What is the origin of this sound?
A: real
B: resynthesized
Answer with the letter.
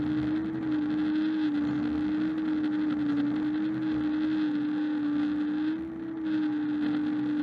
A